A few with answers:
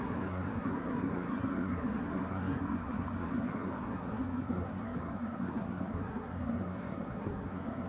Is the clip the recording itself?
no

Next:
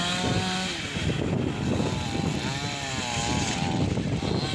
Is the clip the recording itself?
yes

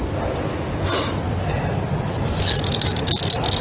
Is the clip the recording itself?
yes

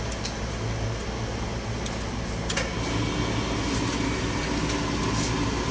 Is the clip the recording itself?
yes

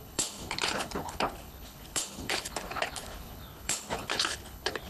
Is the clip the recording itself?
no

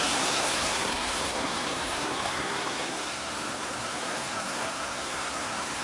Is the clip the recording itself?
no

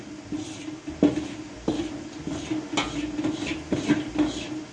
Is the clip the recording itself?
yes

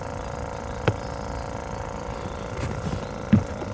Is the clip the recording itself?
yes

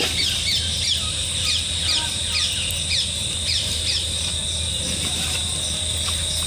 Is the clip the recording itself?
yes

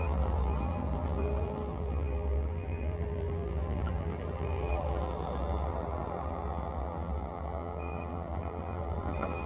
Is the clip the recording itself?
no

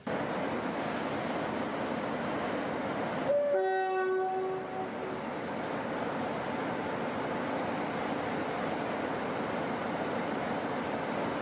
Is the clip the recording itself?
yes